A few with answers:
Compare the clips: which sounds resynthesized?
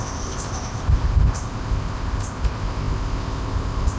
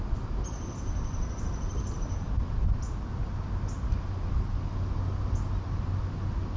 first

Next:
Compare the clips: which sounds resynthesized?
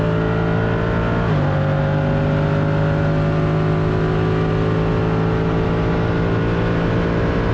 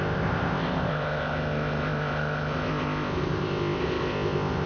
second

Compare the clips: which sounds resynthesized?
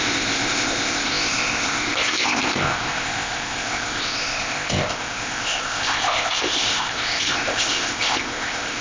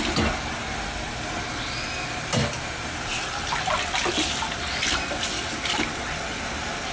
first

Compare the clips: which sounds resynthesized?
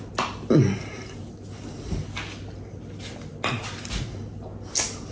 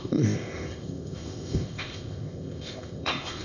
second